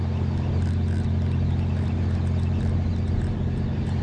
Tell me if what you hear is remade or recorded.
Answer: recorded